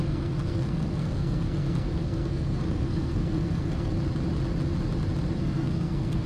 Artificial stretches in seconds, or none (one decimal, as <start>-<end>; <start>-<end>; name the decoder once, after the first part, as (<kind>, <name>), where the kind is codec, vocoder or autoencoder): 0.0-3.9 (codec, SNAC); 5.4-6.3